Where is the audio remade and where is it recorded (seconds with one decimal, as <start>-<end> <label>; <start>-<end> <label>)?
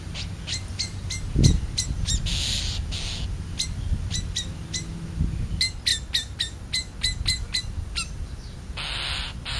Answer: 0.0-9.6 recorded